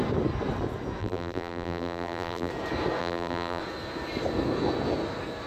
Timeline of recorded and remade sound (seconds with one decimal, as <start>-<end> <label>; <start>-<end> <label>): 0.0-1.0 recorded; 1.0-2.5 remade; 2.5-3.0 recorded; 3.0-3.6 remade; 3.6-5.5 recorded